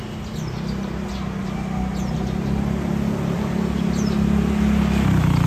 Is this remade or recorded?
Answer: recorded